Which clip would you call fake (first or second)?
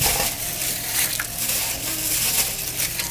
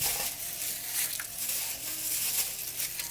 first